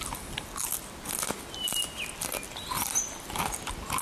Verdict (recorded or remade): recorded